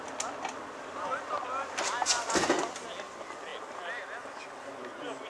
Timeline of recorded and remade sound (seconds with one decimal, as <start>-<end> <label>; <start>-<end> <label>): 0.0-5.3 recorded